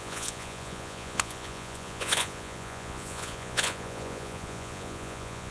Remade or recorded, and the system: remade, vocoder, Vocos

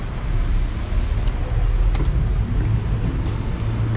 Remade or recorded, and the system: recorded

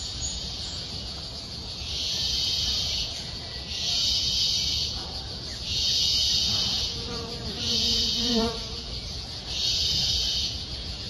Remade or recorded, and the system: remade, vocoder, Vocos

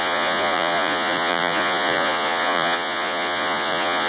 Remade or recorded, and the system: remade, vocoder, Vocos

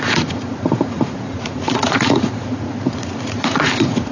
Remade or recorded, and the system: remade, vocoder, Vocos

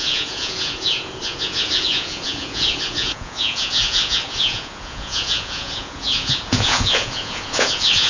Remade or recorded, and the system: remade, vocoder, Vocos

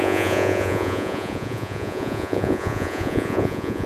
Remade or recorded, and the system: remade, vocoder, Vocos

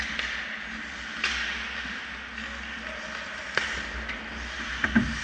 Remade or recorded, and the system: recorded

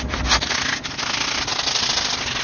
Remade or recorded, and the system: recorded